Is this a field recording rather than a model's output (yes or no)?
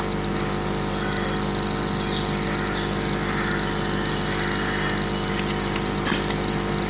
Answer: yes